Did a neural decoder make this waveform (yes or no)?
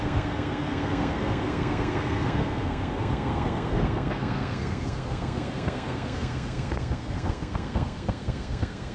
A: yes